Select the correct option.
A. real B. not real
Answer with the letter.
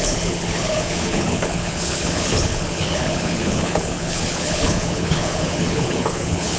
B